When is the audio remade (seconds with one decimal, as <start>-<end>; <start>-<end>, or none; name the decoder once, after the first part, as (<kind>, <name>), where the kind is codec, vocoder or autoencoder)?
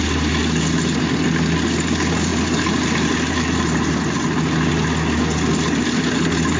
none